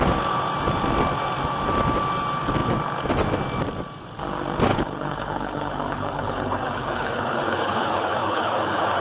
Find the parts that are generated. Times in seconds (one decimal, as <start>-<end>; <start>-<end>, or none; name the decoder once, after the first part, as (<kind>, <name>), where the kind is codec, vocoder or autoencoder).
4.7-9.0 (codec, HILCodec)